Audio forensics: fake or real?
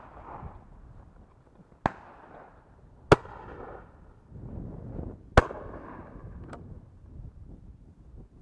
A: real